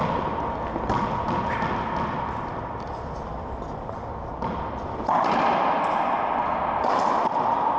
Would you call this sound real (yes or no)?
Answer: yes